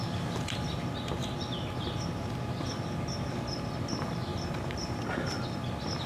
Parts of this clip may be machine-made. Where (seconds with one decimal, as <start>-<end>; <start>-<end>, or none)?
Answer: 4.3-5.0